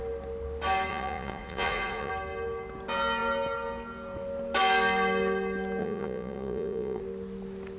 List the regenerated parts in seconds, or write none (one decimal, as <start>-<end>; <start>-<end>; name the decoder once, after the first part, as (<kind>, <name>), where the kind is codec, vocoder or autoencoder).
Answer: 0.9-2.1 (vocoder, Vocos); 5.8-7.0